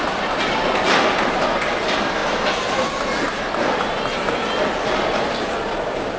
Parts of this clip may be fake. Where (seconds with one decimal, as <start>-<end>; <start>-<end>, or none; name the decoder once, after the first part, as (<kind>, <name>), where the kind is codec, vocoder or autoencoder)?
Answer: none